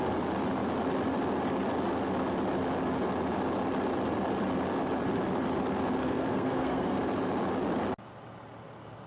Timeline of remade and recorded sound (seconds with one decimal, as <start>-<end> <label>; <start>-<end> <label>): 0.0-6.0 recorded; 6.0-7.0 remade; 7.0-9.1 recorded